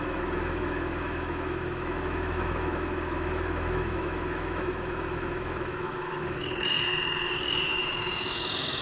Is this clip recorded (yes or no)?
no